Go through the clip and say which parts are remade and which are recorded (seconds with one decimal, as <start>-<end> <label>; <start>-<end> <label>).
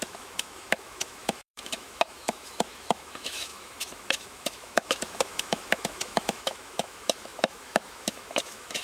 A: 0.0-8.8 remade